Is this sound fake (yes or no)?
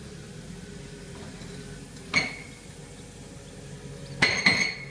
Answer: no